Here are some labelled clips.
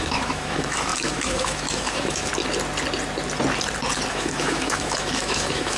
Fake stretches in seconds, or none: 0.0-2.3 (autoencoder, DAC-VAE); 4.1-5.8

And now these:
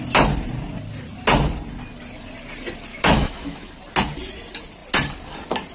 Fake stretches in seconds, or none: 2.9-3.7 (autoencoder, DAC-VAE)